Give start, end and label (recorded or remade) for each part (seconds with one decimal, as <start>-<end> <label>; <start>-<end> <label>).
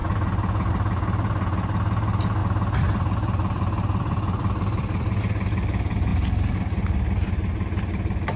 0.0-2.4 recorded; 2.4-5.2 remade; 5.2-8.4 recorded